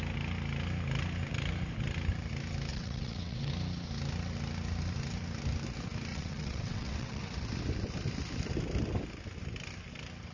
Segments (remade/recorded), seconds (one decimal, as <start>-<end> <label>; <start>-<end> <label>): 0.0-2.7 recorded; 2.7-3.5 remade; 3.5-6.1 recorded; 6.1-7.3 remade; 7.3-10.3 recorded